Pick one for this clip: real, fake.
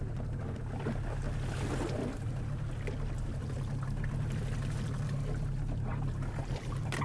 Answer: real